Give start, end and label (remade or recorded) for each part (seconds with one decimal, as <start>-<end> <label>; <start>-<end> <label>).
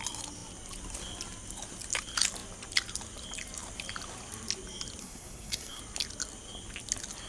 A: 0.0-5.0 recorded; 5.0-5.8 remade; 5.8-7.3 recorded